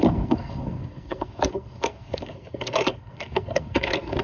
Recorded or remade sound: remade